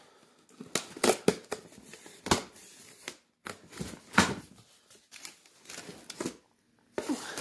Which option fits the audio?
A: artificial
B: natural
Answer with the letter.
B